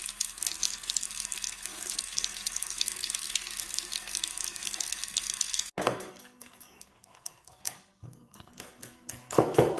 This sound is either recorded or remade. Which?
remade